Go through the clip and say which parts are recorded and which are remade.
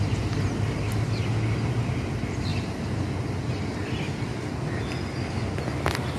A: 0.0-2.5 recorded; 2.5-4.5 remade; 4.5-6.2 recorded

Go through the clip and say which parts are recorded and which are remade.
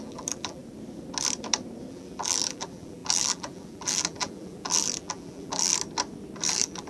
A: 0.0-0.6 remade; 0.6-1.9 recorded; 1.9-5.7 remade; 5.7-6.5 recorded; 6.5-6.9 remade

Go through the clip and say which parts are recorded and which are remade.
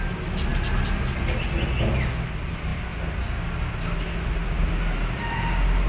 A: 0.0-5.9 recorded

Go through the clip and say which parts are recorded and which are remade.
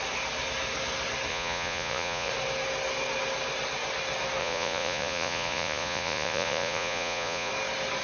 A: 0.0-1.3 recorded; 1.3-2.3 remade; 2.3-4.4 recorded; 4.4-7.5 remade; 7.5-8.0 recorded